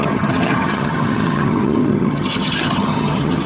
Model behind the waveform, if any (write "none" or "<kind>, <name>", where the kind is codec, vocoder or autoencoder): vocoder, HiFi-GAN